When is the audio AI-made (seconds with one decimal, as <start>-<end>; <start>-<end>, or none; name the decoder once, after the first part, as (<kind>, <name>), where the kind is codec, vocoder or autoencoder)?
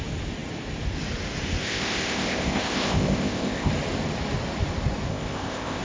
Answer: 1.6-3.7 (codec, ZipCodec); 5.1-5.8